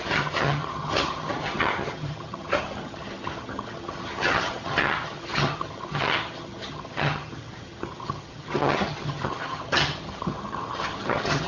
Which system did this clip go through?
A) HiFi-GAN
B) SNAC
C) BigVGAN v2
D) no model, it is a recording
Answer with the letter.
A